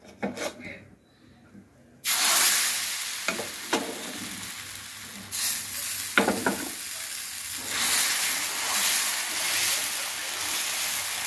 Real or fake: real